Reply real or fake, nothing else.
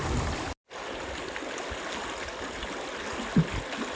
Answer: real